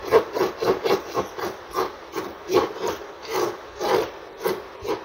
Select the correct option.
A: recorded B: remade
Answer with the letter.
A